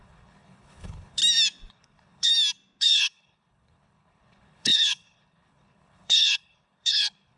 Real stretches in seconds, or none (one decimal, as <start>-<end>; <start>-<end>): 1.2-1.7; 2.3-2.8